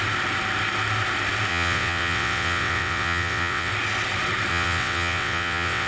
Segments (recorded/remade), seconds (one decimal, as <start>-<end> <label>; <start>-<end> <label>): 0.0-1.5 recorded; 1.5-3.7 remade; 3.7-4.5 recorded; 4.5-5.9 remade